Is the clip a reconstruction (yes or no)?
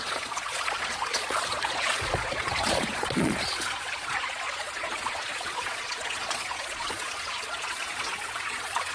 yes